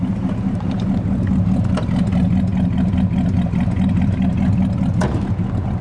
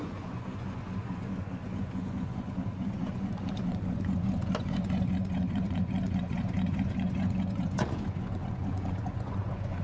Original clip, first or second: first